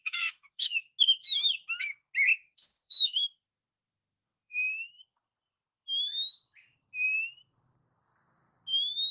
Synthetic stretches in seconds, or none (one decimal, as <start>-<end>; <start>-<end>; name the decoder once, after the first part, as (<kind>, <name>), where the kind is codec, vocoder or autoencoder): 0.0-0.8 (autoencoder, DAC-VAE); 2.3-5.0